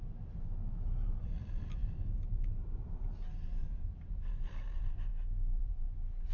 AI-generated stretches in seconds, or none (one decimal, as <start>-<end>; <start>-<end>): 0.0-5.1; 5.6-6.3